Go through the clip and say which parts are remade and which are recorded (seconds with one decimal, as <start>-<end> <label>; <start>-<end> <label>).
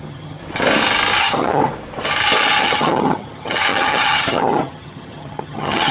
0.0-0.4 remade; 0.4-1.2 recorded; 1.2-1.6 remade; 1.6-2.6 recorded; 2.6-5.9 remade